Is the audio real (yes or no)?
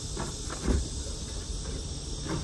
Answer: yes